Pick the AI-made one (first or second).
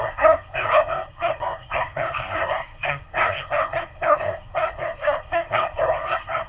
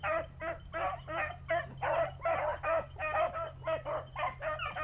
first